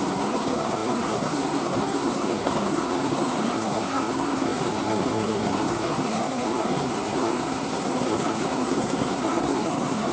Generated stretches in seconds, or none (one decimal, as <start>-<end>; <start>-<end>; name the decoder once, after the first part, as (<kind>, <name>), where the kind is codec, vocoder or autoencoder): 0.0-10.1 (codec, SNAC)

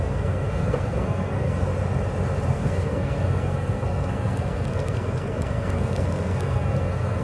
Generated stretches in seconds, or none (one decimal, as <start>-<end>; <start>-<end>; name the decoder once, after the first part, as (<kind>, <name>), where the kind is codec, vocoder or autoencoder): 0.0-1.7 (codec, SNAC); 2.5-7.2

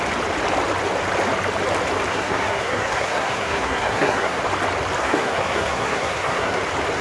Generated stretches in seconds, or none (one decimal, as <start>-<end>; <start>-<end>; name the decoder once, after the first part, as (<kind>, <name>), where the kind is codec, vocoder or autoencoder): 2.1-4.4 (codec, SNAC); 5.0-6.6

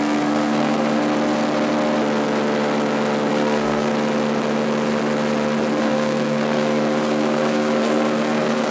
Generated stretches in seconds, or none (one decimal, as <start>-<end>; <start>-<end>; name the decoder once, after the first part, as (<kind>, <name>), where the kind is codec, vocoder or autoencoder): 0.0-1.0 (codec, SNAC); 3.3-3.9; 5.8-8.7

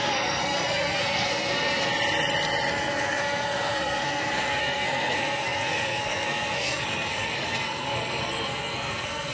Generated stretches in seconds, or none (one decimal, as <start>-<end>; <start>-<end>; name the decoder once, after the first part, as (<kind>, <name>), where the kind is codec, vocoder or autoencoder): 0.0-1.9 (codec, SNAC); 2.7-9.3

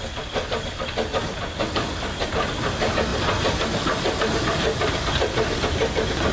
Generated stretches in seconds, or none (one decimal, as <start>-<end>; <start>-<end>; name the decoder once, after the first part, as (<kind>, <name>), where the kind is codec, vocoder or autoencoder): none

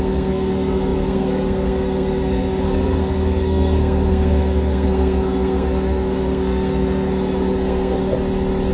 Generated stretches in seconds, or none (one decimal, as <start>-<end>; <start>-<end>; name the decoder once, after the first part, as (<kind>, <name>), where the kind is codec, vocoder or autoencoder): 0.0-8.0 (codec, SNAC)

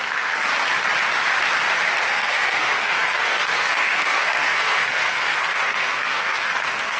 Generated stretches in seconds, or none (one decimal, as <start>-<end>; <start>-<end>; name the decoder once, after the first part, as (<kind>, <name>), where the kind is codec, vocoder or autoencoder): 0.0-0.5 (codec, SNAC); 2.1-7.0